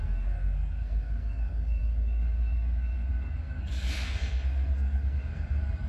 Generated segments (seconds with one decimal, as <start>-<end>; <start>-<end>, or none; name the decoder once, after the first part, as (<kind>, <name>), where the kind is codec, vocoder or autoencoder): 0.0-5.9 (codec, SNAC)